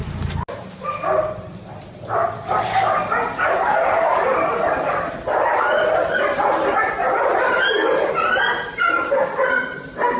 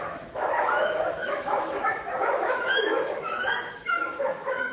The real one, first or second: first